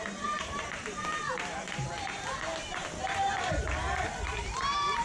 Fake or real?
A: fake